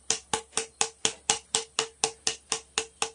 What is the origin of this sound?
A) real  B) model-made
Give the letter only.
A